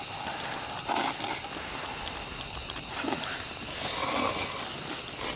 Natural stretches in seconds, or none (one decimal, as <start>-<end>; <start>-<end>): 0.0-2.6; 3.7-5.4